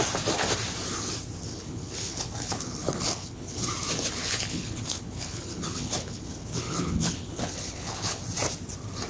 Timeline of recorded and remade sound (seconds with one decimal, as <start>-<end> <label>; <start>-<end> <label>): 0.0-1.5 recorded; 1.5-3.6 remade; 3.6-4.2 recorded; 4.2-8.2 remade; 8.2-9.1 recorded